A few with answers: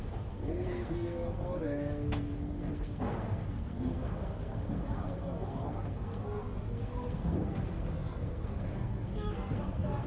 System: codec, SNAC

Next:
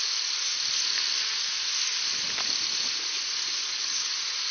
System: none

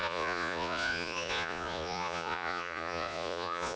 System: vocoder, Vocos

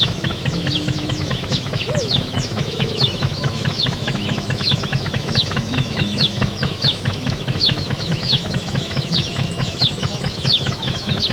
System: autoencoder, DAC-VAE